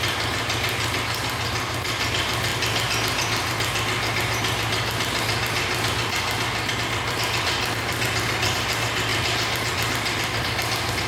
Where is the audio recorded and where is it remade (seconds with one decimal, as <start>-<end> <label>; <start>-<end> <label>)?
0.0-11.1 recorded